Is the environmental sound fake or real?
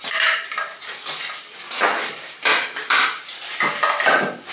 real